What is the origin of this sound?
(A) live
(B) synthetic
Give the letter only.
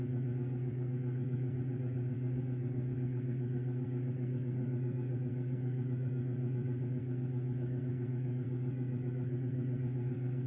B